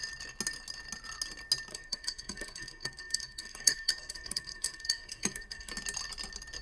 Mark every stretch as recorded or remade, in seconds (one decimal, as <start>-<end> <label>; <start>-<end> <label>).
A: 0.0-1.7 recorded; 1.7-5.7 remade; 5.7-6.6 recorded